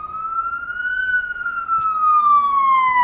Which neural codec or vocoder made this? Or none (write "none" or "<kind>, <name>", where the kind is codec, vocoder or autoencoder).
none